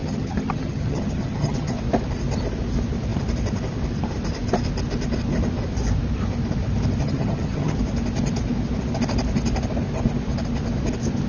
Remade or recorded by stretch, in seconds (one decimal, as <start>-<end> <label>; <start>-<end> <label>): 0.0-1.7 remade; 1.7-7.0 recorded; 7.0-7.8 remade; 7.8-11.3 recorded